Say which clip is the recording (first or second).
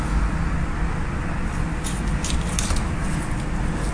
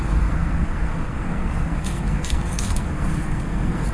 first